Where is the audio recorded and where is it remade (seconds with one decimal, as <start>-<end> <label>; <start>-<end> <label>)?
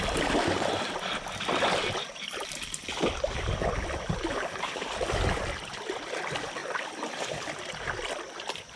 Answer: 0.0-8.8 recorded